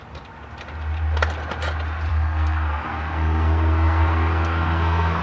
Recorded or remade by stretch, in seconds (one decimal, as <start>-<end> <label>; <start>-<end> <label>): 0.0-2.1 recorded; 2.1-5.2 remade